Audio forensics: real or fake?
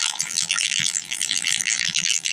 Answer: fake